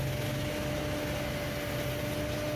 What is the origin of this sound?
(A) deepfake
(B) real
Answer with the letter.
B